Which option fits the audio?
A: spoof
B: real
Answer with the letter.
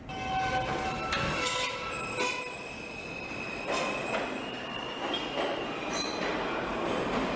B